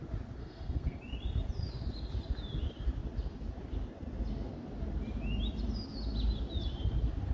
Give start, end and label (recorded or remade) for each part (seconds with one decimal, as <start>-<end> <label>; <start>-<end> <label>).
0.0-0.4 recorded; 0.4-1.0 remade; 1.0-7.3 recorded